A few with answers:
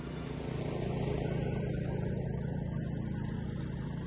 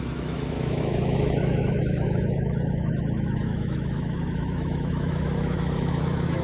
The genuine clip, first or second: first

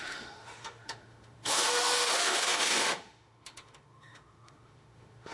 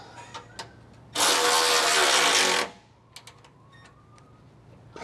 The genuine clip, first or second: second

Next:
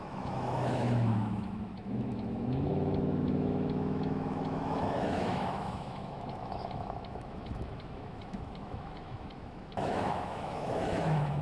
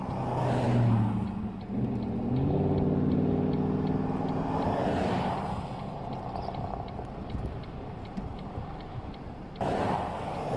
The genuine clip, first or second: second